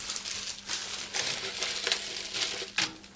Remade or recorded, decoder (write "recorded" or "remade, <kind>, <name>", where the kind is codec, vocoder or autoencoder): recorded